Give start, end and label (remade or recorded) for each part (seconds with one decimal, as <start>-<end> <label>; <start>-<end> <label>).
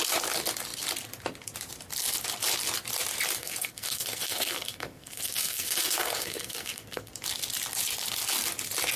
0.0-3.4 recorded; 3.4-7.1 remade; 7.1-9.0 recorded